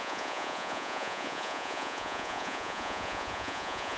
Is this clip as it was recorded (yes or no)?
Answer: no